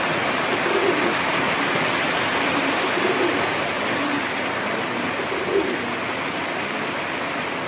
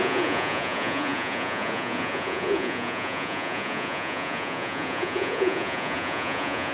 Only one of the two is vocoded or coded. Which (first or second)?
second